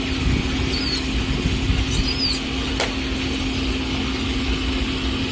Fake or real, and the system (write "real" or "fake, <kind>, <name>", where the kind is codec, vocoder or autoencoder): real